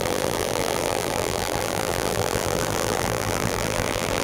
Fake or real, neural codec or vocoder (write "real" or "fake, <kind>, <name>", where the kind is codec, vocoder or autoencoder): fake, vocoder, BigVGAN v2